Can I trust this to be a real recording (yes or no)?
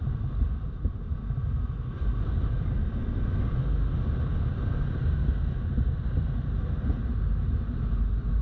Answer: yes